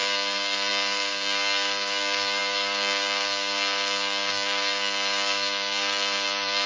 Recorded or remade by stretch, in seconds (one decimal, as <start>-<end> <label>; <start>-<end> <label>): 0.0-6.7 remade